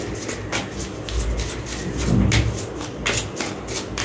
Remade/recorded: recorded